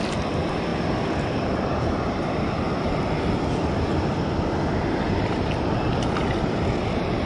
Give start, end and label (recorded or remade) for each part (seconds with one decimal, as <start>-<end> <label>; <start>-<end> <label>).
0.0-7.3 recorded